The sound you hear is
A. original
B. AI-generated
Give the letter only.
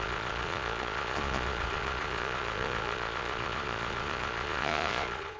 B